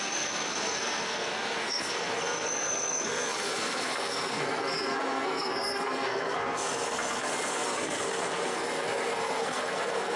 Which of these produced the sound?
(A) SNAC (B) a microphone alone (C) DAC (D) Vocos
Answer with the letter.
A